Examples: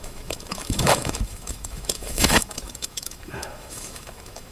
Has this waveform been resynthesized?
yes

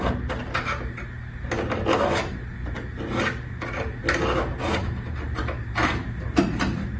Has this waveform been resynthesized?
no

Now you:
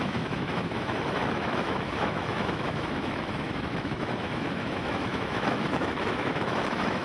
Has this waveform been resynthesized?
yes